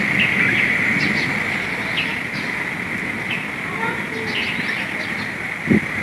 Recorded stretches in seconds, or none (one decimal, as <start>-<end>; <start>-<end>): 0.0-6.0